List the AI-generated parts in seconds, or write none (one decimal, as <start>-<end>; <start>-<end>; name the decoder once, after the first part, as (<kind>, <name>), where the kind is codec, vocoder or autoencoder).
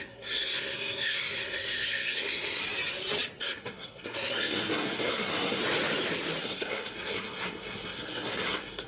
0.0-2.6 (codec, SNAC); 3.4-5.6; 6.4-8.9